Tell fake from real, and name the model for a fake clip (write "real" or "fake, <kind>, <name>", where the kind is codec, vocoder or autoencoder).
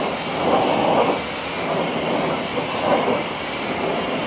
real